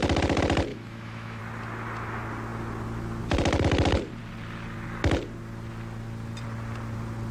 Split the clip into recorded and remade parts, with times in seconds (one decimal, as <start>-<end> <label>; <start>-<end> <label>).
0.0-0.7 recorded; 0.7-1.4 remade; 1.4-7.3 recorded